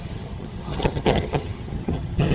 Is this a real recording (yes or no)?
no